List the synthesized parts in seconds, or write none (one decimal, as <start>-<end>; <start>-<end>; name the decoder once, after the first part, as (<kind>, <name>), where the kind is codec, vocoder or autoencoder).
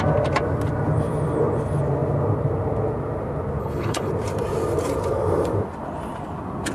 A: 3.6-4.1 (codec, HILCodec)